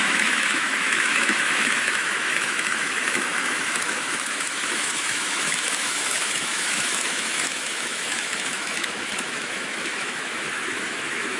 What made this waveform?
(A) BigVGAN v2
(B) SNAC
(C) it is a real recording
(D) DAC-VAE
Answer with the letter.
D